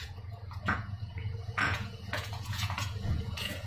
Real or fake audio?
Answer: fake